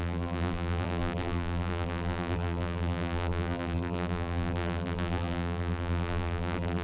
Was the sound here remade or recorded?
remade